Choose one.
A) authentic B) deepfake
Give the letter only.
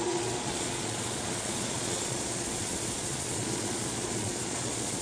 B